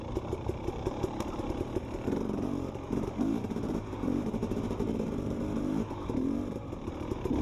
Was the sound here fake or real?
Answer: fake